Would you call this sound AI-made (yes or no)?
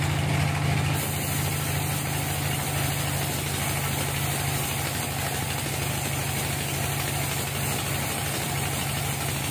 no